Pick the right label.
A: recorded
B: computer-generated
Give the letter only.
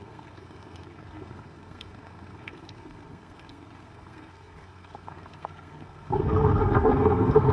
B